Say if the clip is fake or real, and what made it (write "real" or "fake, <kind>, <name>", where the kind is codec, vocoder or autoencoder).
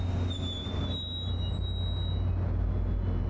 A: real